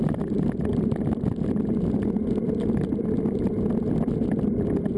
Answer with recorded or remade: recorded